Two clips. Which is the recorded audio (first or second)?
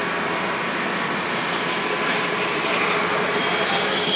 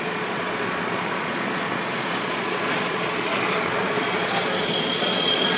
first